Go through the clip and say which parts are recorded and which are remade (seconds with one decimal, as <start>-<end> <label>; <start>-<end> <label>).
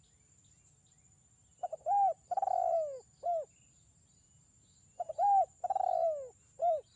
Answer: 0.0-7.0 recorded